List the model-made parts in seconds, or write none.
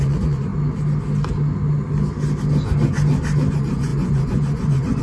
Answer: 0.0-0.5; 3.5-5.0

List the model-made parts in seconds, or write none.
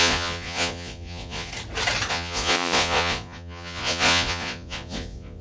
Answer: 0.0-1.5; 2.1-5.4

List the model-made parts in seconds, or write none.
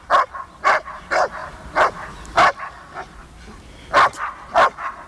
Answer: none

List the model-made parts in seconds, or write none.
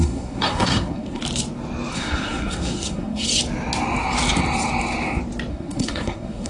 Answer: 0.0-1.2; 1.9-3.3; 5.5-6.5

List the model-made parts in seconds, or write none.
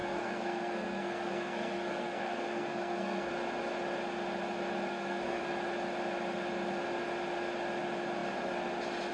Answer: 0.0-3.3; 4.9-5.4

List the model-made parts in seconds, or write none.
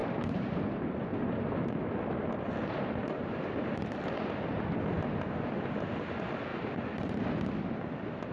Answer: 0.0-0.6; 1.1-2.2; 3.0-4.5; 6.5-7.2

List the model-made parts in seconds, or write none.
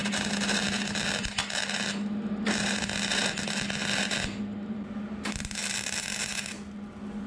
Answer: none